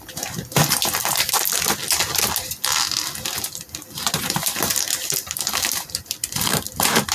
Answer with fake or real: fake